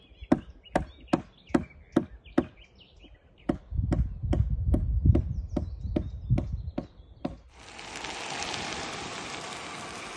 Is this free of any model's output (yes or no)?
yes